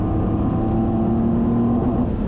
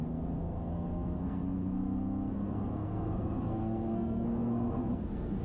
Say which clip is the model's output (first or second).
second